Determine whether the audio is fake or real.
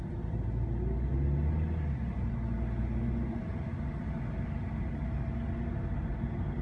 real